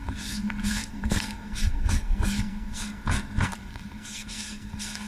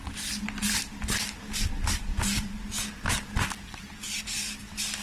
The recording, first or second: second